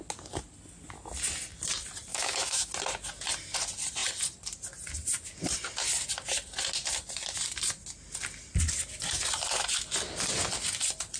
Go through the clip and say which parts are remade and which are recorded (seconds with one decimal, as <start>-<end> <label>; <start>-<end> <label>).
0.0-2.1 recorded; 2.1-2.7 remade; 2.7-11.2 recorded